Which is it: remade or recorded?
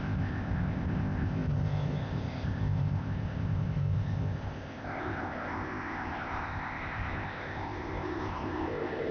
remade